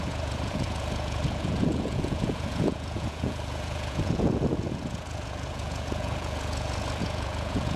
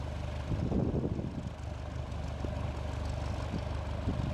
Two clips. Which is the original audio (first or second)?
second